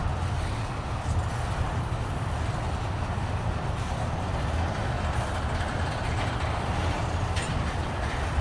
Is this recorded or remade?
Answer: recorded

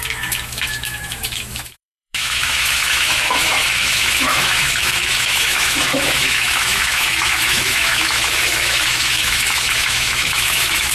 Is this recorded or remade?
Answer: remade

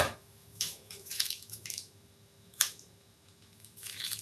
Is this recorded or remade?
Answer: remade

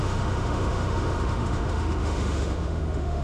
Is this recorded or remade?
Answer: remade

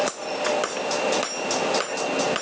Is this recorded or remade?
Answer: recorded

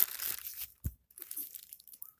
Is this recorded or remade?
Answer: recorded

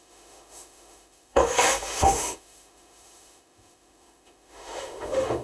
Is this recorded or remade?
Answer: remade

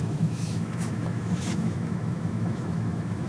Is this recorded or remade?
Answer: remade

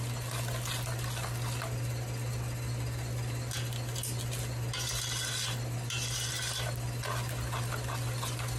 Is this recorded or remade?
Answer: recorded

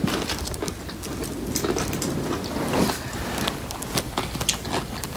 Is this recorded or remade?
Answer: recorded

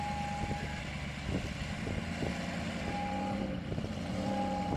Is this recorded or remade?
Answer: recorded